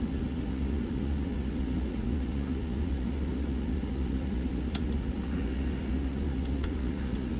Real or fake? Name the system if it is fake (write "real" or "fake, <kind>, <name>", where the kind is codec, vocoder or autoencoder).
fake, vocoder, Vocos